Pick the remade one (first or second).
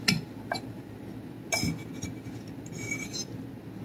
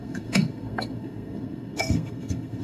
second